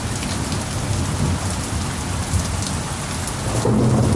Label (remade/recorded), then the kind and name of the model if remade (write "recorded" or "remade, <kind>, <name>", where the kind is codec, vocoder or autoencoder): recorded